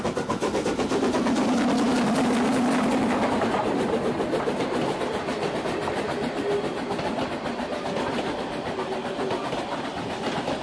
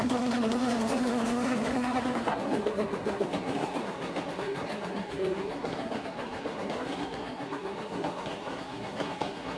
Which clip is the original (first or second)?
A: first